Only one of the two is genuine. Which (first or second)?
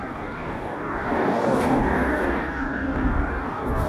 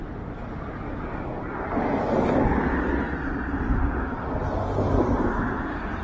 second